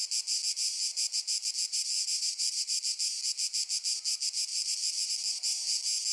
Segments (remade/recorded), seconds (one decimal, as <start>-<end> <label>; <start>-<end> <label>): 0.0-1.6 recorded; 1.6-2.8 remade; 2.8-4.5 recorded; 4.5-5.1 remade; 5.1-6.1 recorded